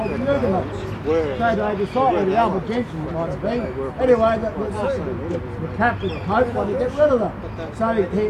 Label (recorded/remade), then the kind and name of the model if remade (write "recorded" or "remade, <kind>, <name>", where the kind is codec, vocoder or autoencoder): recorded